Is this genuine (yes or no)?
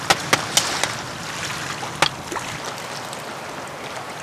yes